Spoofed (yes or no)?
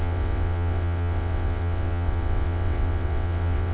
yes